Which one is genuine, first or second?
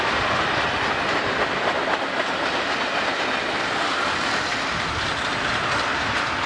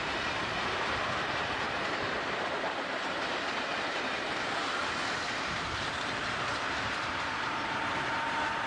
first